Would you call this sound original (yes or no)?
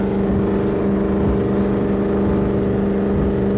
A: yes